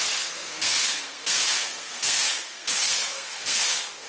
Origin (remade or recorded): remade